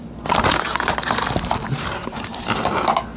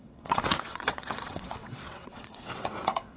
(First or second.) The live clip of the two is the first